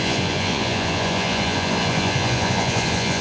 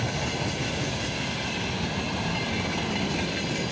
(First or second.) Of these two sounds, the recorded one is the second